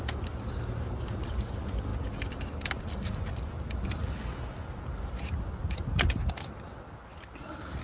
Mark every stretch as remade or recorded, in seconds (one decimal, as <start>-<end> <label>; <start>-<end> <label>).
0.0-7.8 recorded